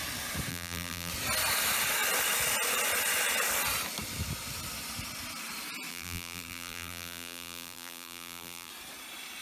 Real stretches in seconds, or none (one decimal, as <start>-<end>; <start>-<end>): 0.0-0.5; 1.1-5.9; 8.7-9.4